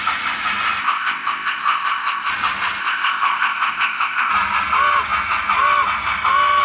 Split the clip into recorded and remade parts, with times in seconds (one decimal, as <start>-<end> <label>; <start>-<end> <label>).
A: 0.0-0.8 recorded; 0.8-2.3 remade; 2.3-2.8 recorded; 2.8-4.3 remade; 4.3-6.6 recorded